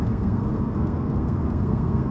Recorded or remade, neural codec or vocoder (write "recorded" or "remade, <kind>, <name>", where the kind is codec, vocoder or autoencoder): remade, codec, SNAC